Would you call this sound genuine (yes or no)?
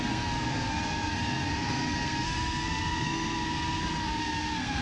no